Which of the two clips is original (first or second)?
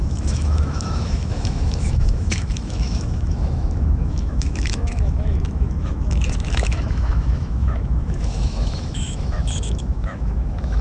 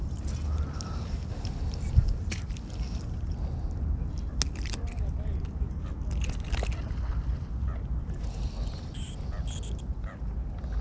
second